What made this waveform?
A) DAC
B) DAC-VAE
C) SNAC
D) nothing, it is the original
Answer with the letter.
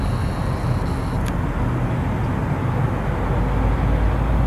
D